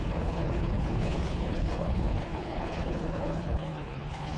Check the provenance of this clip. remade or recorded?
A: remade